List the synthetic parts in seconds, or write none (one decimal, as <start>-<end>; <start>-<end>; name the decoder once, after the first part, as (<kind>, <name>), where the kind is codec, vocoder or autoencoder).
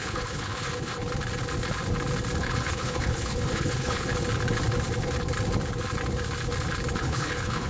0.0-1.0 (codec, HILCodec); 2.4-4.1; 7.0-7.7